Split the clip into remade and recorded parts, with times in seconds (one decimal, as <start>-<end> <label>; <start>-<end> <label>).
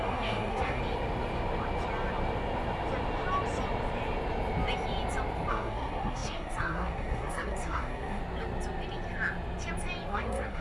0.0-0.8 remade; 0.8-5.5 recorded; 5.5-8.2 remade; 8.2-10.1 recorded; 10.1-10.6 remade